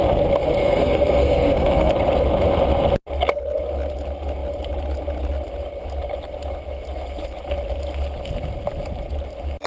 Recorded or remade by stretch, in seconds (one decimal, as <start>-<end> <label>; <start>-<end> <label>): 0.0-0.6 recorded; 0.6-1.9 remade; 1.9-9.7 recorded